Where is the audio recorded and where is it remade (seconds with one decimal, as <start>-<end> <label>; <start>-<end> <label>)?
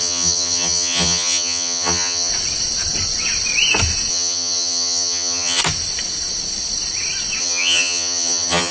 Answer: 0.0-2.3 remade; 2.3-4.1 recorded; 4.1-5.6 remade; 5.6-7.4 recorded; 7.4-8.7 remade